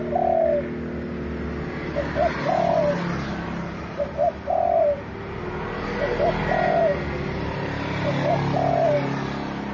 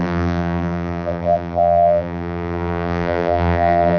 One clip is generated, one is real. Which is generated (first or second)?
second